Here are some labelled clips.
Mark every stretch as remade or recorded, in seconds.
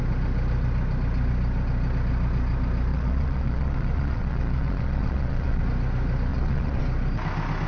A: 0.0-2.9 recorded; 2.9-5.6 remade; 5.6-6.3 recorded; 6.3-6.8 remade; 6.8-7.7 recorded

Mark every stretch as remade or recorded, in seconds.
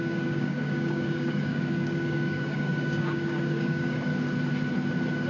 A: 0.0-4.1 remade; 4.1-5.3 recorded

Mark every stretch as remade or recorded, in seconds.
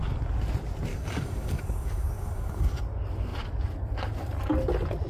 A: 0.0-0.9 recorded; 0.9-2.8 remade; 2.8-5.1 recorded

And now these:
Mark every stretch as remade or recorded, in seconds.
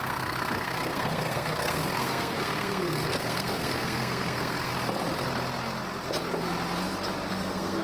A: 0.0-4.7 remade; 4.7-7.3 recorded; 7.3-7.8 remade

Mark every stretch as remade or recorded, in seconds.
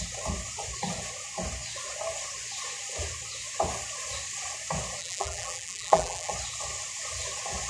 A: 0.0-5.0 recorded; 5.0-6.3 remade; 6.3-7.7 recorded